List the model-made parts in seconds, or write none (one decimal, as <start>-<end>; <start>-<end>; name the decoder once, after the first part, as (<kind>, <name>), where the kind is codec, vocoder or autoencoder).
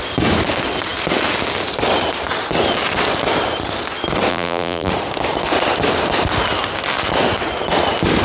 4.3-4.9 (vocoder, BigVGAN v2)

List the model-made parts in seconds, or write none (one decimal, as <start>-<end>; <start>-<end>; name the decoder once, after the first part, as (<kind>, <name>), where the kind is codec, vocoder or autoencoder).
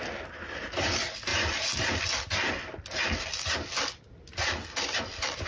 none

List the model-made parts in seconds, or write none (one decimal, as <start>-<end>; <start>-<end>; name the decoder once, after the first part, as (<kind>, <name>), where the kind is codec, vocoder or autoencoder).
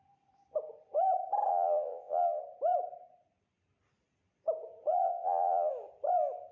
1.5-2.4 (vocoder, Vocos); 4.9-5.7